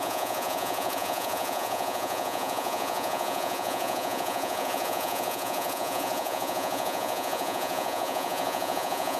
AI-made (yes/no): yes